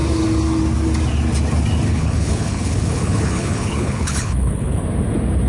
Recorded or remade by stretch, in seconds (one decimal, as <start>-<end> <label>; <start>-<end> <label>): 0.0-1.9 recorded; 1.9-4.8 remade; 4.8-5.5 recorded

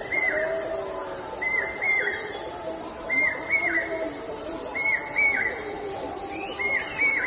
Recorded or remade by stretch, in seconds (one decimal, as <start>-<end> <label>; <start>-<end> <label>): 0.0-7.3 recorded

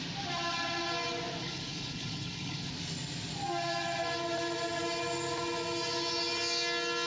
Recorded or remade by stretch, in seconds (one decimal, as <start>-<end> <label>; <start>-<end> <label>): 0.0-1.4 recorded; 1.4-2.7 remade; 2.7-7.1 recorded

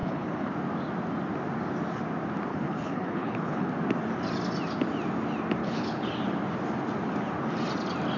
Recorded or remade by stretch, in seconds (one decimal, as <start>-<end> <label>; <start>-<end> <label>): 0.0-0.5 remade; 0.5-2.5 recorded; 2.5-3.7 remade; 3.7-5.6 recorded; 5.6-6.1 remade; 6.1-8.2 recorded

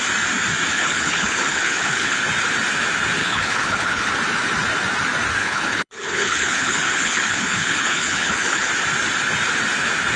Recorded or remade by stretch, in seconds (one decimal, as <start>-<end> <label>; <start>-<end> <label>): 0.0-0.7 recorded; 0.7-2.2 remade; 2.2-3.2 recorded; 3.2-4.1 remade; 4.1-5.4 recorded; 5.4-8.7 remade; 8.7-10.2 recorded